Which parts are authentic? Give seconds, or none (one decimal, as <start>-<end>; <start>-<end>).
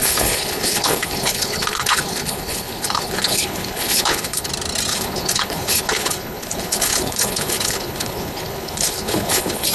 4.5-4.9